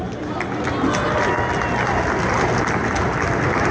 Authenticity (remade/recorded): recorded